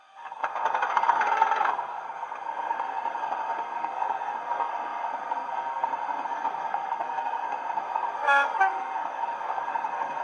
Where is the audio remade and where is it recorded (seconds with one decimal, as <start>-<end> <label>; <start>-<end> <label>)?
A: 0.0-10.2 remade